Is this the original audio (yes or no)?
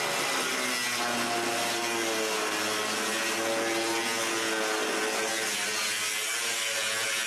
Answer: yes